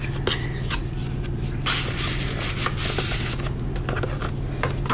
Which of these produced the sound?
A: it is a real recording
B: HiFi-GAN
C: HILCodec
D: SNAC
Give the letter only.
A